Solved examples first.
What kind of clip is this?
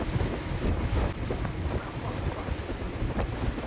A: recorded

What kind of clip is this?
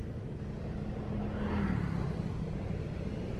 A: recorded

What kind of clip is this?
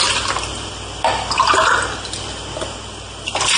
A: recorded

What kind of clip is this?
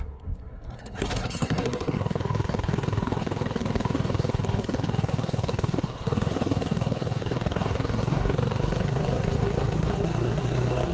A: remade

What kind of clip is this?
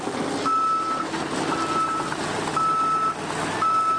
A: recorded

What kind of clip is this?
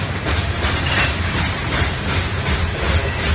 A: remade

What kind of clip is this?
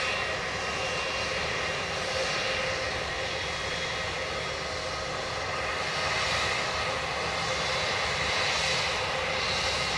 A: recorded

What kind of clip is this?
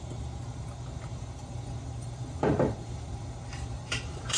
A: remade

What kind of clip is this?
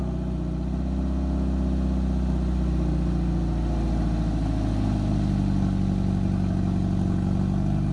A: recorded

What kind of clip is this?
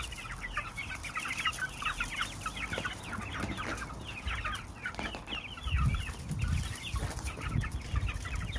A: recorded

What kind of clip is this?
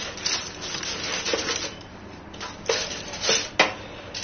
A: recorded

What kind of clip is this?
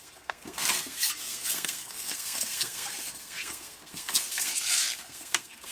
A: remade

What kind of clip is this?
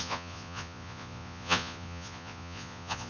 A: remade